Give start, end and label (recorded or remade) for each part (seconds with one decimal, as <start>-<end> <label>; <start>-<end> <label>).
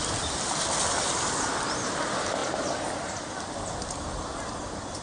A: 0.0-2.4 recorded; 2.4-3.6 remade; 3.6-5.0 recorded